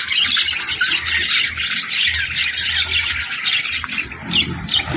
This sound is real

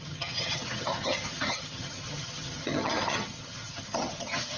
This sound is fake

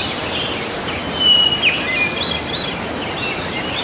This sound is real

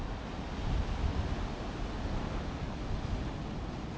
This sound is real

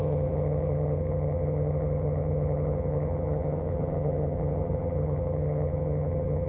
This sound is fake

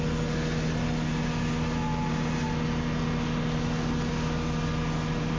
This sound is real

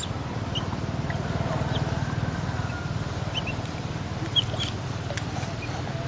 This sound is real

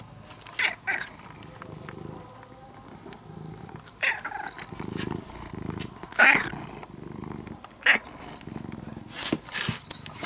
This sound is real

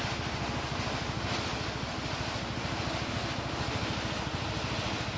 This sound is real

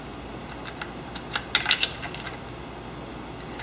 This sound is real